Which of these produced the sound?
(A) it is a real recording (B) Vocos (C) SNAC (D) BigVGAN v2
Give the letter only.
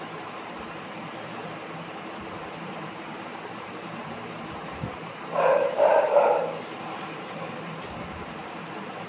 D